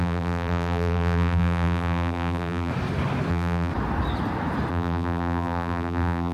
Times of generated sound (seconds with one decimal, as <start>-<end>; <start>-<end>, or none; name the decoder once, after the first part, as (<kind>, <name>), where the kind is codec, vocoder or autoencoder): 0.0-2.7 (vocoder, BigVGAN v2); 3.3-3.7; 4.7-6.3